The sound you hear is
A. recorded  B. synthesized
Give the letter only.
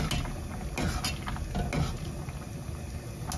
A